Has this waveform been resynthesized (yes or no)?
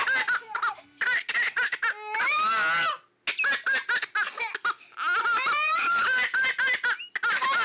no